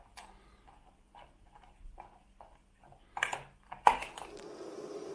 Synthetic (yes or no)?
no